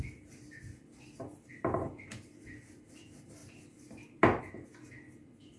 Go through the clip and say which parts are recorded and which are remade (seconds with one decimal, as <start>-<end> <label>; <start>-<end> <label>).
0.0-5.6 recorded